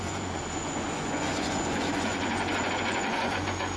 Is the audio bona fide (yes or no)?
no